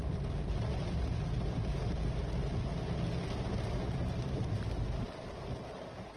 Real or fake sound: real